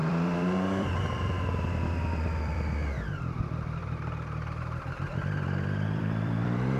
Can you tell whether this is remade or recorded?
remade